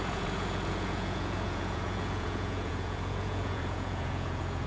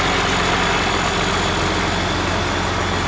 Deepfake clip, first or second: first